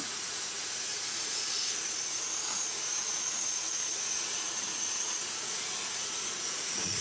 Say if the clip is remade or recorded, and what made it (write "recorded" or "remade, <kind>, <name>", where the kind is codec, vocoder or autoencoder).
remade, vocoder, Vocos